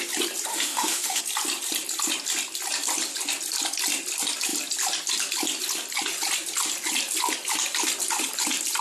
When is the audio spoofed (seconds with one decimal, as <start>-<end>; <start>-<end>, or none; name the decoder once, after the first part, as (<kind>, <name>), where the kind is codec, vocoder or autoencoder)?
0.5-1.2 (autoencoder, DAC-VAE)